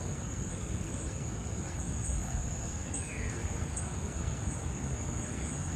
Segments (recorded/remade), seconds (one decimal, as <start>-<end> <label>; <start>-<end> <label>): 0.0-5.8 remade